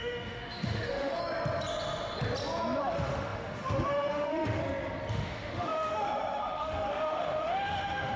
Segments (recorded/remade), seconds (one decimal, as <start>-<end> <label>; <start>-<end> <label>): 0.0-1.2 remade; 1.2-2.8 recorded; 2.8-4.6 remade; 4.6-5.1 recorded; 5.1-8.2 remade

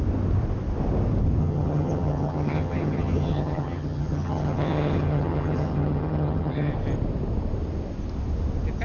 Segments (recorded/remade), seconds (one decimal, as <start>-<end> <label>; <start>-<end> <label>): 0.0-1.4 recorded; 1.4-6.7 remade; 6.7-8.8 recorded

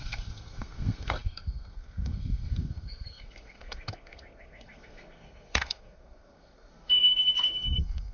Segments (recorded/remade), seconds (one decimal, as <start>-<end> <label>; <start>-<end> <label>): 0.0-8.1 remade

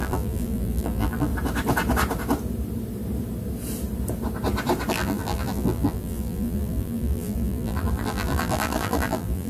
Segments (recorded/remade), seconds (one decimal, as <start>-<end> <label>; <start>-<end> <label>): 0.0-1.3 remade; 1.3-4.9 recorded; 4.9-9.5 remade

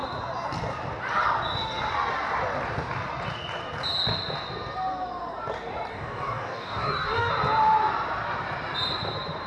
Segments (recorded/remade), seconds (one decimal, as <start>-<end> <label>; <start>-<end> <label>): 0.0-5.9 recorded; 5.9-7.3 remade; 7.3-9.5 recorded

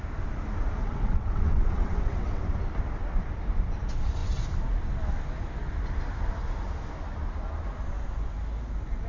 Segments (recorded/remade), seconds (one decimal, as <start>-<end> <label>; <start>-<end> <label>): 0.0-0.8 recorded; 0.8-2.4 remade; 2.4-9.1 recorded